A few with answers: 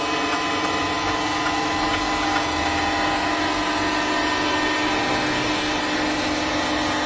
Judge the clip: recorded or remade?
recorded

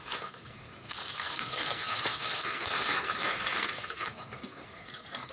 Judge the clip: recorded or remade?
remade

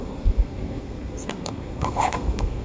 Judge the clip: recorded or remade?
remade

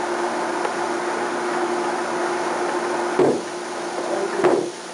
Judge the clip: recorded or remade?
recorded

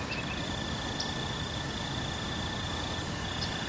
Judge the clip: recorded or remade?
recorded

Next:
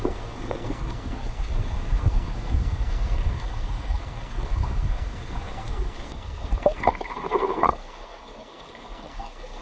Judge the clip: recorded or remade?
remade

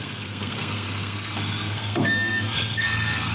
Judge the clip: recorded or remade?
remade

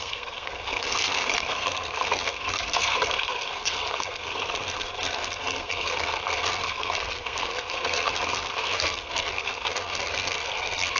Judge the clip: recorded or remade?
remade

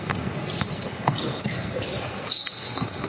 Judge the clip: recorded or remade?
remade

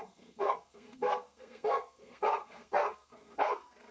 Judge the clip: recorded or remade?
remade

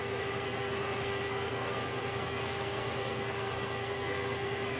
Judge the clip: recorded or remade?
remade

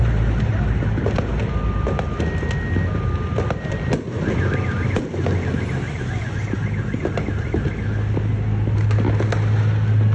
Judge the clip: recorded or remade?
recorded